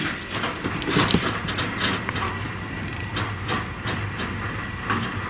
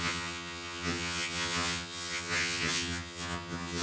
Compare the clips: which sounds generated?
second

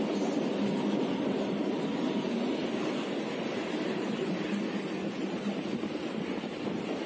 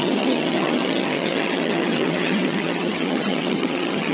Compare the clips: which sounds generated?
second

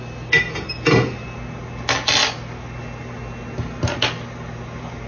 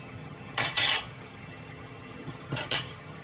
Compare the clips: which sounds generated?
second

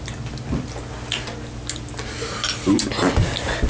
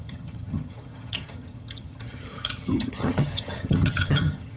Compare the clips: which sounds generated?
second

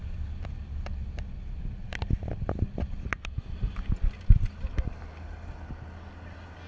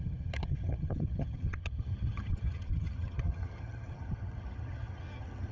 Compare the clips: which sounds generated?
second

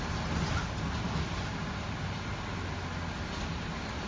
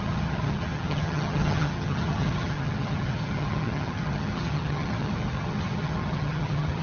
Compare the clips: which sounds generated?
second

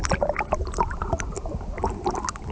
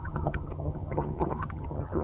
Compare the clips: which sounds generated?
second